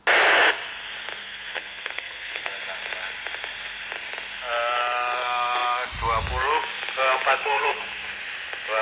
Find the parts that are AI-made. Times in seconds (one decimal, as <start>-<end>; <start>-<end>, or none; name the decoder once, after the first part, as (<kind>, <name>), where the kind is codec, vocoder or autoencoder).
1.2-2.5 (codec, SNAC); 7.4-8.2